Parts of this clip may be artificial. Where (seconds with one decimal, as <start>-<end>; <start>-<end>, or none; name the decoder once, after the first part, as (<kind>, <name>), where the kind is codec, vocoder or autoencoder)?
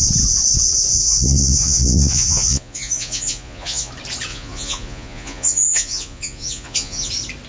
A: 0.9-3.9 (vocoder, Vocos); 4.3-7.1